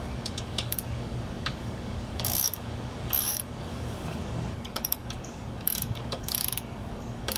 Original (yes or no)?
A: no